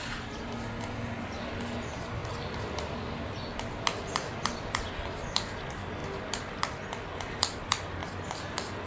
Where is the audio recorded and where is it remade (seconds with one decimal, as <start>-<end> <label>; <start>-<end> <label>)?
0.0-2.2 remade; 2.2-4.6 recorded; 4.6-6.0 remade; 6.0-7.4 recorded; 7.4-8.0 remade; 8.0-8.9 recorded